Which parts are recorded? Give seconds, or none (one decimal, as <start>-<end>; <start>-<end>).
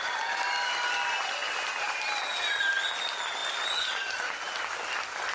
0.0-5.3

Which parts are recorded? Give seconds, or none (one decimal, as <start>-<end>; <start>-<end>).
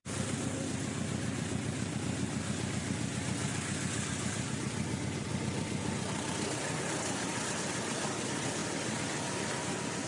none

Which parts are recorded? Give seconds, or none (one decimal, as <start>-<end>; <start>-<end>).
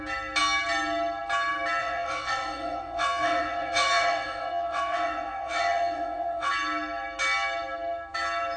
0.0-1.8; 6.5-8.6